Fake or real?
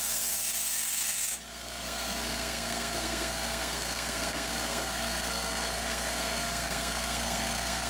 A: fake